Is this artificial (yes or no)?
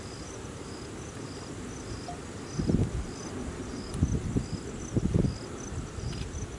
no